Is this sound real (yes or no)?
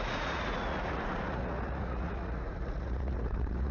no